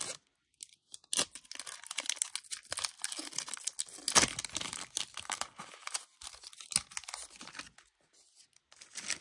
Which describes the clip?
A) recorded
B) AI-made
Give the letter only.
A